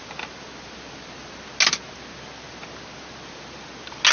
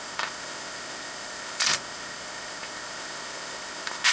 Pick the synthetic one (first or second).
second